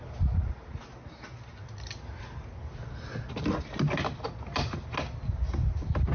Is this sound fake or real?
real